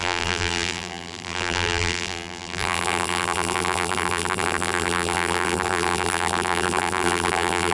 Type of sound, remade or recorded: remade